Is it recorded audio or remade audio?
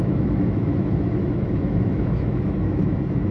remade